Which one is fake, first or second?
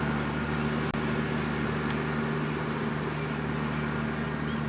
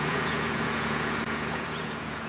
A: second